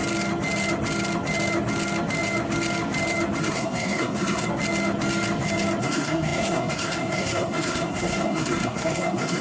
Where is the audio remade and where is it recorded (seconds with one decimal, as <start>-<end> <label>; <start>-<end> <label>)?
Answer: 0.0-3.4 recorded; 3.4-4.5 remade; 4.5-5.8 recorded; 5.8-9.4 remade